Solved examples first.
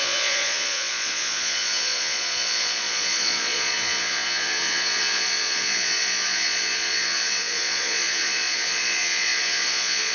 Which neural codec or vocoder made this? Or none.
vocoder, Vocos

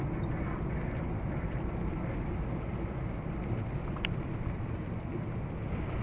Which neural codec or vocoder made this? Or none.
none